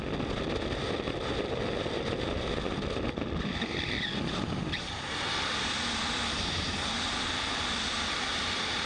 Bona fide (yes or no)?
yes